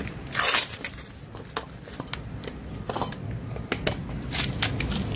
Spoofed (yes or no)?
no